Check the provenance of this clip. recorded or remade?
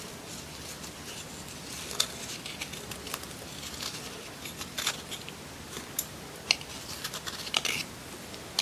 recorded